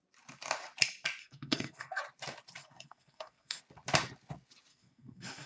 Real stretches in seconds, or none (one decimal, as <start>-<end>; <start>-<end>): 0.0-1.2; 2.0-2.6; 3.6-4.7